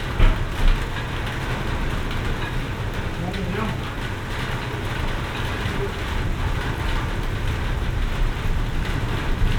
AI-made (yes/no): no